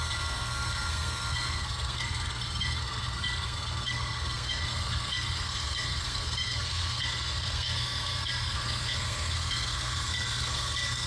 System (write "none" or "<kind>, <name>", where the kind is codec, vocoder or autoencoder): codec, SNAC